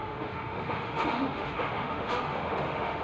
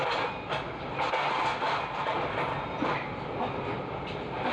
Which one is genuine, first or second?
second